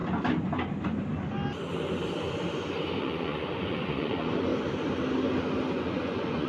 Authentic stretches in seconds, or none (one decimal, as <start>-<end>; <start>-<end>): 0.0-3.0; 4.5-5.7